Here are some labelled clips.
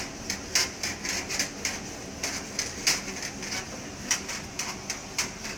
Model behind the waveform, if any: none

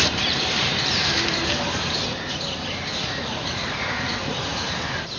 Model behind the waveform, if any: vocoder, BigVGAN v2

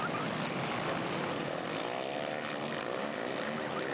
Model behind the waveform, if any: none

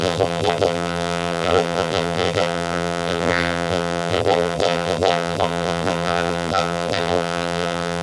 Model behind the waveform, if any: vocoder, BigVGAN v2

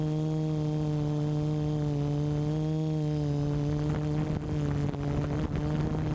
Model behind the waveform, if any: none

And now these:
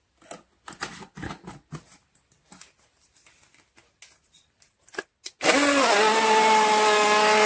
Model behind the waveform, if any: none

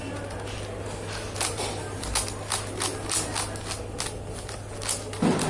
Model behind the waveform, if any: none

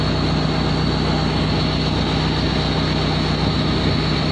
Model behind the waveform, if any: none